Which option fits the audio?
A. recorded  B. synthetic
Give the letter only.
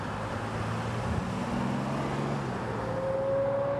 A